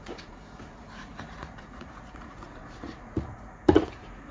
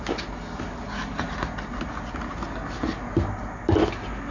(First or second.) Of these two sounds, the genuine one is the second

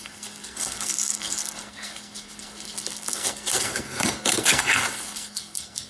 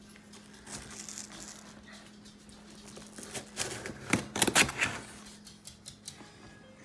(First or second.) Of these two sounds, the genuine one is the second